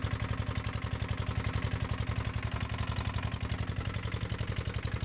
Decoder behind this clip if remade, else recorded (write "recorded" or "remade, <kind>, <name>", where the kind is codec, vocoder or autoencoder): recorded